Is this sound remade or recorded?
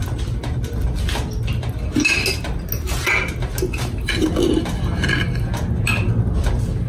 recorded